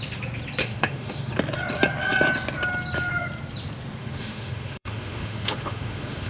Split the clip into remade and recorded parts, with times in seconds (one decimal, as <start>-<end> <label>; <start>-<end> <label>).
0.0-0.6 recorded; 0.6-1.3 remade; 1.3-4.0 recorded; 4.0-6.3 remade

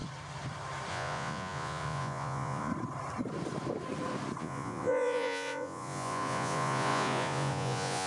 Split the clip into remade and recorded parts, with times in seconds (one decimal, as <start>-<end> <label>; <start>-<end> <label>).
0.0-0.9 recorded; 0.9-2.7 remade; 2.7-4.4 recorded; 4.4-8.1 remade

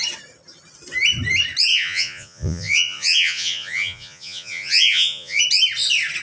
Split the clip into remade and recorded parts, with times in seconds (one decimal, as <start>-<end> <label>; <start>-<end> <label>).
0.0-1.7 recorded; 1.7-5.4 remade; 5.4-6.2 recorded

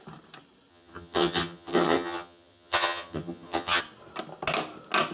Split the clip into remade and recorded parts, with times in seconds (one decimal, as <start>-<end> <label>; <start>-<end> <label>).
0.0-0.7 recorded; 0.7-3.8 remade; 3.8-5.1 recorded